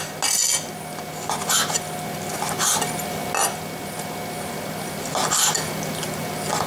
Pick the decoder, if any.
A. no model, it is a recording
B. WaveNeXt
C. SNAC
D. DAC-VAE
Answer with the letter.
A